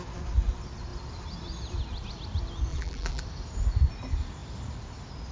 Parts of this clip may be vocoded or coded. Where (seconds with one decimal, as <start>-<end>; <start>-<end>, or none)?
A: 2.7-3.2